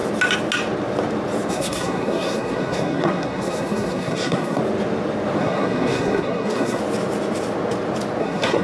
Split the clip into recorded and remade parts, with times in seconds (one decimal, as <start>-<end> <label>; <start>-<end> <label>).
0.0-1.5 recorded; 1.5-4.6 remade; 4.6-5.4 recorded; 5.4-6.8 remade; 6.8-8.2 recorded; 8.2-8.6 remade